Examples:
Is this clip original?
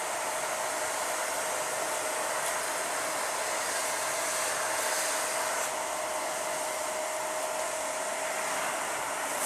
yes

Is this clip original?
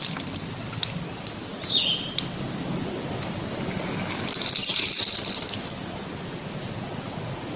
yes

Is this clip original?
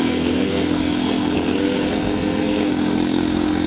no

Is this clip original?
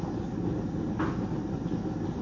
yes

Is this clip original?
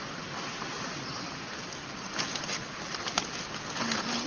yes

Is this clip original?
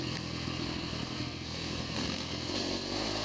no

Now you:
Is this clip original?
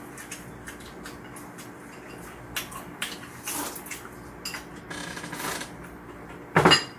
yes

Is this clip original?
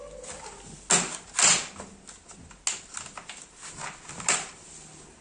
yes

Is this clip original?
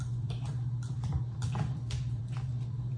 no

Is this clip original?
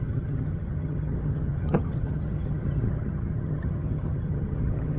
no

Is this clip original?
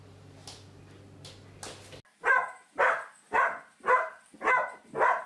yes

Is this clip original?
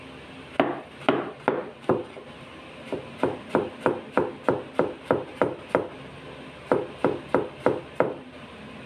yes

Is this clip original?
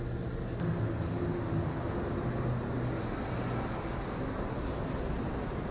yes